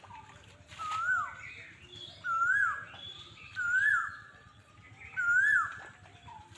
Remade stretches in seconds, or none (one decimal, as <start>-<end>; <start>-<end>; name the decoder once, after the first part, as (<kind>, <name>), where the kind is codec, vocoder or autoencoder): 4.0-4.7 (vocoder, Vocos)

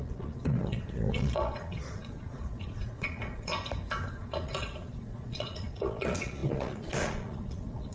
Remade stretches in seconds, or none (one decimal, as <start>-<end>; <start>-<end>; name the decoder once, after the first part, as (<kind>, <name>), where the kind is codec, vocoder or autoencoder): 0.0-3.5 (vocoder, Vocos); 4.1-7.9

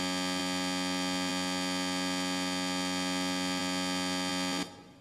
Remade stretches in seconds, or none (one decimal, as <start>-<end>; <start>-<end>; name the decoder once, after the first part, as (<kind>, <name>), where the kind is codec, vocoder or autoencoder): none

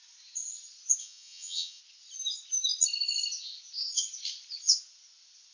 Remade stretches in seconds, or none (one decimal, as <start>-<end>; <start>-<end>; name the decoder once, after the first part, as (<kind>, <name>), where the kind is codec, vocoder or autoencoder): 1.0-1.8 (vocoder, Vocos)

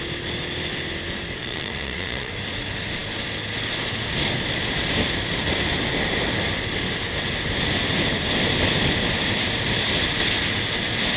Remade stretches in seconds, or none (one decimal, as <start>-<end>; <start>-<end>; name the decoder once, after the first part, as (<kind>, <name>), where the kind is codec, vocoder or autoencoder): 1.4-2.3 (vocoder, Vocos)